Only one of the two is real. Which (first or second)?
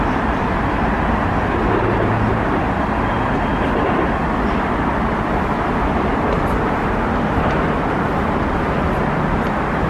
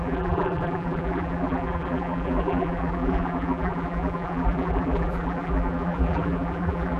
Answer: first